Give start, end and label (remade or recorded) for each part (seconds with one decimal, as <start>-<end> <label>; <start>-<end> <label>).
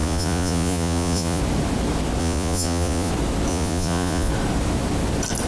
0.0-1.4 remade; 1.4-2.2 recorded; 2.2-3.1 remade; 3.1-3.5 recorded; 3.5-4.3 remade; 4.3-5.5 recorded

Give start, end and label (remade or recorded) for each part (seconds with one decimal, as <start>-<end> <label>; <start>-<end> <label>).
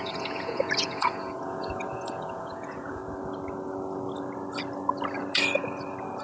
0.0-3.0 remade; 3.0-6.2 recorded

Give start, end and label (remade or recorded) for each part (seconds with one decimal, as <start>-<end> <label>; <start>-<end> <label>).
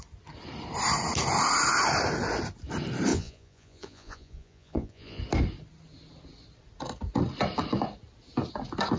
0.0-3.1 recorded; 3.1-5.2 remade; 5.2-9.0 recorded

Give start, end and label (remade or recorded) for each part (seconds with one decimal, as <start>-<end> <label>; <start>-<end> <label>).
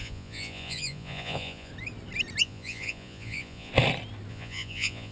0.0-1.7 remade; 1.7-2.4 recorded; 2.4-3.7 remade; 3.7-4.3 recorded; 4.3-5.1 remade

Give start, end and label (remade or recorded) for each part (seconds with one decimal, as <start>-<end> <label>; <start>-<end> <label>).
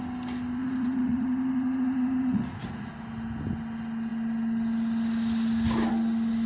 0.0-0.6 recorded; 0.6-2.9 remade; 2.9-6.5 recorded